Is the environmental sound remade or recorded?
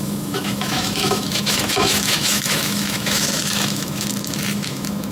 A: remade